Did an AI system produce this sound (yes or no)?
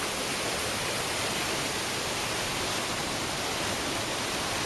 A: no